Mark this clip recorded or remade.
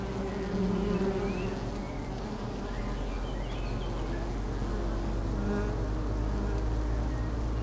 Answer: recorded